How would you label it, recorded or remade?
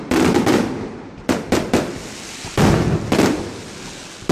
recorded